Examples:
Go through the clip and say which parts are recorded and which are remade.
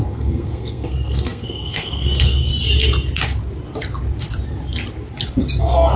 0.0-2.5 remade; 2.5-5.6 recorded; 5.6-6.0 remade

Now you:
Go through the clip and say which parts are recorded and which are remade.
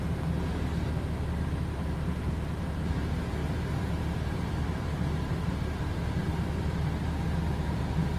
0.0-3.4 recorded; 3.4-6.7 remade; 6.7-8.2 recorded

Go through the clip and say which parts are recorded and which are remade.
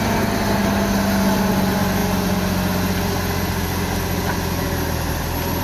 0.0-5.6 recorded